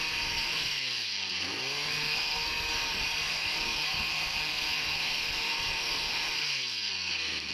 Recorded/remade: remade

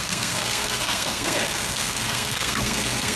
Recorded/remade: remade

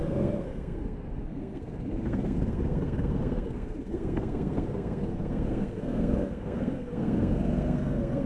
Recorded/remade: remade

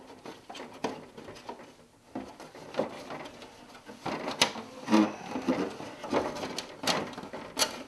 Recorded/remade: recorded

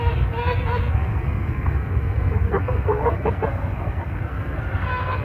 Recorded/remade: remade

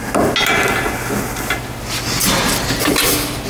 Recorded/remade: recorded